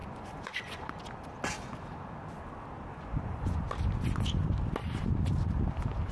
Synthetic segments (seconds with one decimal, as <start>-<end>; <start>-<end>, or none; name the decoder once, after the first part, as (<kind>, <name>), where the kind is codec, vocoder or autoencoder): 0.0-0.9 (vocoder, Vocos); 2.9-3.6